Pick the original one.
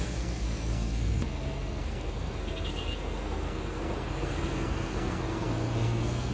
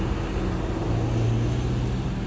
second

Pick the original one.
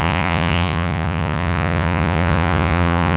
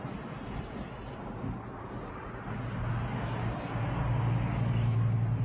second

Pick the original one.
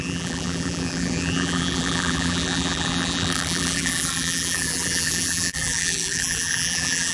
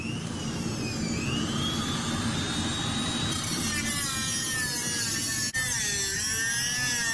second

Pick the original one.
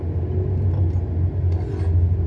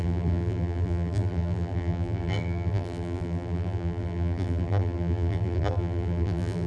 first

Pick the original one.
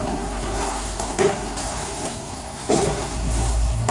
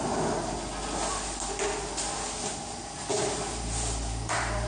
second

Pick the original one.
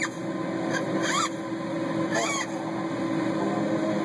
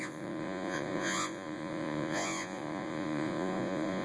first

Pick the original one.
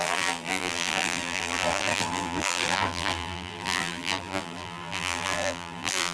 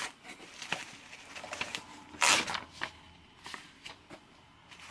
second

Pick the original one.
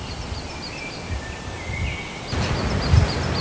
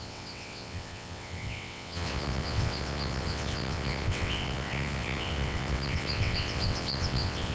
first